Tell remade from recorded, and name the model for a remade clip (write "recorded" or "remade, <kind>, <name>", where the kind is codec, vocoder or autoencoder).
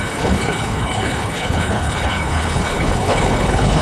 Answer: remade, codec, HILCodec